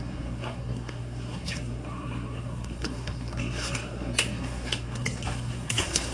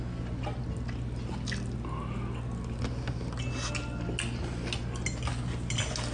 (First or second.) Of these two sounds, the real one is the second